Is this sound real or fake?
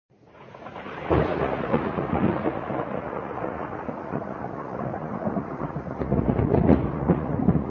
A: fake